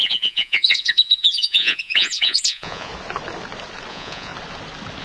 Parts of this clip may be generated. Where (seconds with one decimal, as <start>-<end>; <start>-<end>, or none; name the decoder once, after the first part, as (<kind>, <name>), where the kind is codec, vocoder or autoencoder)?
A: 0.0-2.9 (vocoder, Vocos); 3.9-4.3